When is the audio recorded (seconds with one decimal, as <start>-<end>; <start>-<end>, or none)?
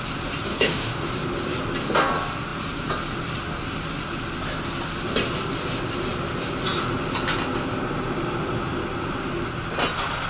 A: 0.0-0.5; 1.1-10.3